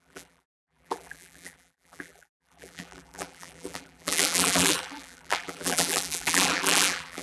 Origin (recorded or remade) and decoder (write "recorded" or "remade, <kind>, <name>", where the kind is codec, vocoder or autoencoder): remade, vocoder, BigVGAN v2